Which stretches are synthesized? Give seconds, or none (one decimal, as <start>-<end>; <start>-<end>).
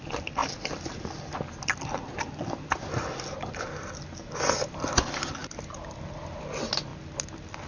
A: none